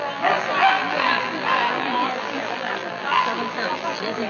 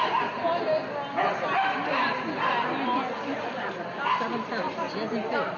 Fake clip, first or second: first